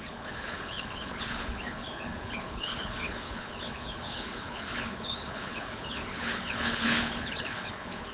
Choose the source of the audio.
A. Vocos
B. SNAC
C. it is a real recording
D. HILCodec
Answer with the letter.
D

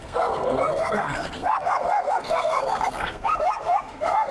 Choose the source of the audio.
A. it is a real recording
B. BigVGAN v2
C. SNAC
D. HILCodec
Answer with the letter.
C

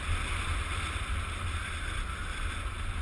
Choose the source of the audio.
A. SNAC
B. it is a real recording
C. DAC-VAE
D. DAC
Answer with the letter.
B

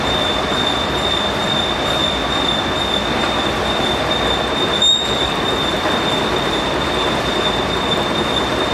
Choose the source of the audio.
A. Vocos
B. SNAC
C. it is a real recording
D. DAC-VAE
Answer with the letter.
C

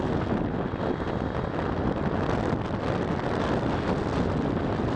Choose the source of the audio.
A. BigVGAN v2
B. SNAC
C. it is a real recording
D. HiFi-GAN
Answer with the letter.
C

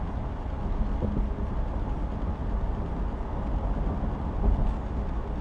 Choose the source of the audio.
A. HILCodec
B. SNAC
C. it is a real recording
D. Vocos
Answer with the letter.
C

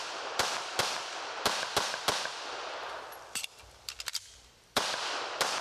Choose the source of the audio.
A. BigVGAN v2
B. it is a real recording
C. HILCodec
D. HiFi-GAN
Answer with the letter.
A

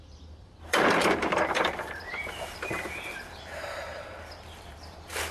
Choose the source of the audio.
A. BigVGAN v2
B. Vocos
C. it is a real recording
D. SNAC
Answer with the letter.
A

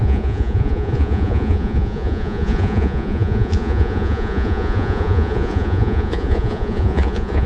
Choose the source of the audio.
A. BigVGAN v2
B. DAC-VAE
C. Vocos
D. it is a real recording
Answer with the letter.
C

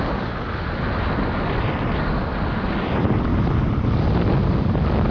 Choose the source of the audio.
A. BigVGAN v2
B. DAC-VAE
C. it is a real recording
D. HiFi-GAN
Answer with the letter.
C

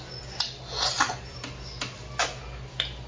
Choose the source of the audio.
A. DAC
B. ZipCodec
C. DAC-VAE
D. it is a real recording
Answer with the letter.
D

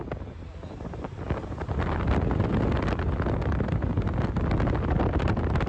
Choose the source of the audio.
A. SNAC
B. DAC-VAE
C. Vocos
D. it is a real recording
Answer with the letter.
D